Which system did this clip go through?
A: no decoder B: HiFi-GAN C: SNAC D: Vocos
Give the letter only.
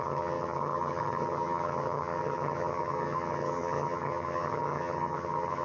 B